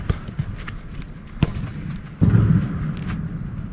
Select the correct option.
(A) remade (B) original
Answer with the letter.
B